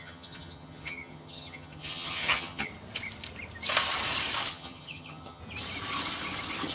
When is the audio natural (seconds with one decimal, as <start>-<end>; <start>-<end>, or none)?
2.7-4.5; 5.4-6.7

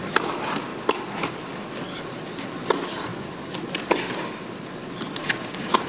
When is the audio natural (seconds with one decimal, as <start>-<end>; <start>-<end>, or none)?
0.0-5.9

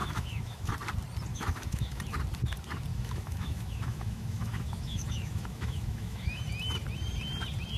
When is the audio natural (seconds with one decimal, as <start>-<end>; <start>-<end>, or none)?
0.7-1.3; 2.0-2.9; 6.4-7.8

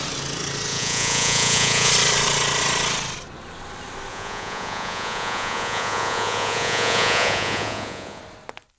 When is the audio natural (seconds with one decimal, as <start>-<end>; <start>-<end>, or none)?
0.0-0.7; 1.9-4.1; 8.2-8.8

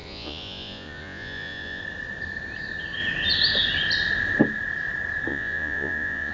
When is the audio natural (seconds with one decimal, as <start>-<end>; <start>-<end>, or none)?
1.8-5.3

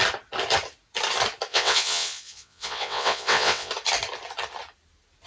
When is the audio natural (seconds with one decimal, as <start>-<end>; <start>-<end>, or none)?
0.0-1.5; 3.7-5.3